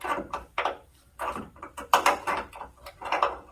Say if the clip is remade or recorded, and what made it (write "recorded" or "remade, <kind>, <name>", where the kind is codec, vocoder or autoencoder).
remade, vocoder, BigVGAN v2